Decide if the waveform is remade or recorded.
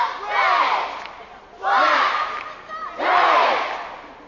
recorded